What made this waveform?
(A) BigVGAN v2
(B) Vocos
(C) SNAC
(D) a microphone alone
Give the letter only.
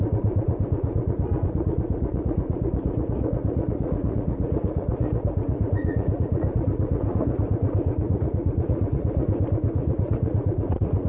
B